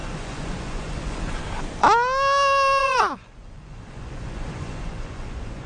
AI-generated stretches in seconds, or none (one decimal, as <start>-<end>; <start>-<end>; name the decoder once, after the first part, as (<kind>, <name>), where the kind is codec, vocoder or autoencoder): 0.0-1.4 (vocoder, Vocos); 2.8-5.7